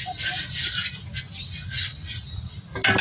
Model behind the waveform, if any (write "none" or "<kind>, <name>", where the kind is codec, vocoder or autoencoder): none